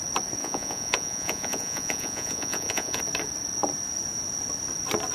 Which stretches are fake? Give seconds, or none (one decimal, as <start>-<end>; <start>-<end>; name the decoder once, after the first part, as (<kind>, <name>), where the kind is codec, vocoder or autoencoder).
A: 0.4-3.0 (vocoder, Vocos)